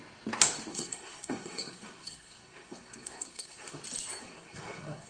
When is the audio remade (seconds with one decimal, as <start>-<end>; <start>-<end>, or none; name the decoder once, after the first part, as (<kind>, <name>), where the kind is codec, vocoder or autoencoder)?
0.7-3.8 (codec, SNAC); 4.2-5.1